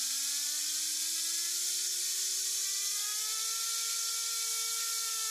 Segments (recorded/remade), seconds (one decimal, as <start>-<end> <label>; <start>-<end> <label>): 0.0-5.3 recorded